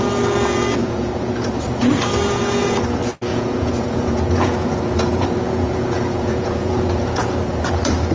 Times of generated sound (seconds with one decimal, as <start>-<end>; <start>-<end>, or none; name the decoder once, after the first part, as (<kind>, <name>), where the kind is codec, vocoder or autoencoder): 0.8-1.9 (vocoder, Vocos); 3.3-7.3